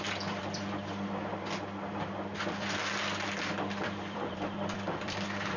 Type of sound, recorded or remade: remade